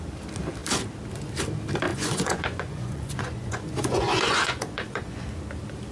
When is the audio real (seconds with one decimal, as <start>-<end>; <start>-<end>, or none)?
0.0-1.9; 5.4-5.9